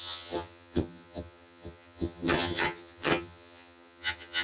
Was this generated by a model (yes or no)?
yes